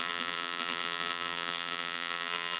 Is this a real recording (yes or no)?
no